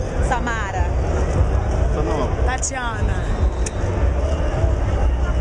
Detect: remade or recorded recorded